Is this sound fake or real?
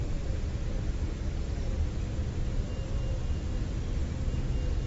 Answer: real